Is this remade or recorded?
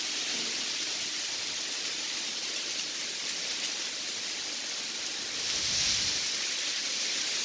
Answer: recorded